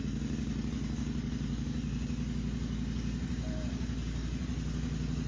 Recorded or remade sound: recorded